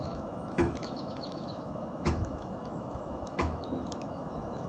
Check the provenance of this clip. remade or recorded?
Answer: remade